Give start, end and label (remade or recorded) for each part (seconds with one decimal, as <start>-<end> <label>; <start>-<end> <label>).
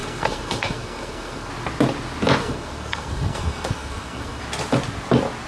0.0-1.5 remade; 1.5-2.4 recorded; 2.4-4.4 remade; 4.4-5.5 recorded